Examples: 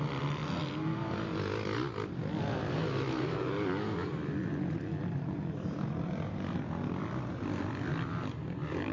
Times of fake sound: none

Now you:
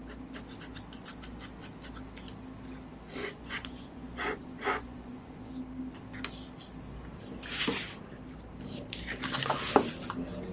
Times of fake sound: 3.2-5.5 (vocoder, Vocos)

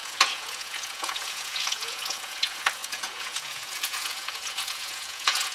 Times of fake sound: 0.0-5.5 (vocoder, Vocos)

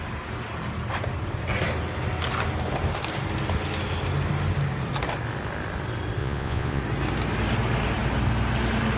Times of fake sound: 6.2-6.8 (vocoder, Vocos)

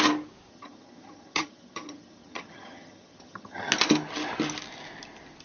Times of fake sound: 0.5-3.7 (vocoder, HiFi-GAN)